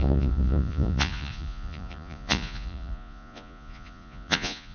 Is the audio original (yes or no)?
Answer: no